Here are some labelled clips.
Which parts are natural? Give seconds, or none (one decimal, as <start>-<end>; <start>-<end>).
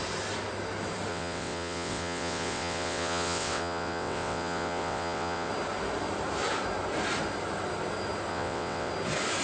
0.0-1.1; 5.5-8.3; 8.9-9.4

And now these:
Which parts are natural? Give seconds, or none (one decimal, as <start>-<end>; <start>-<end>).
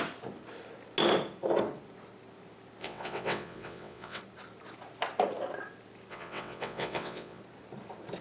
0.0-2.8; 4.2-6.1; 7.4-8.2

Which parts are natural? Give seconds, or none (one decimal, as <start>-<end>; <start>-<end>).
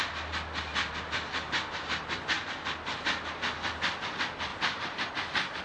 0.0-0.7; 2.0-4.5; 5.1-5.6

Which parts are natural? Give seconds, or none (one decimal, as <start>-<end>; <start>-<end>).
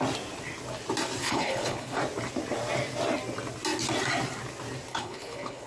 0.0-1.2; 2.0-4.9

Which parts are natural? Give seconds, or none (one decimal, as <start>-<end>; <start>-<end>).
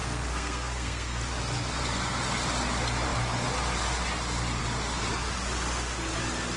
1.2-6.6